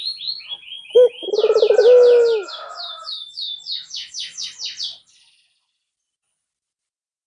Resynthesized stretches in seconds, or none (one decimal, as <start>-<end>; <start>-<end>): 0.6-1.2; 1.8-4.5